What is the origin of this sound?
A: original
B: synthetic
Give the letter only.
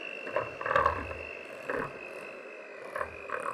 B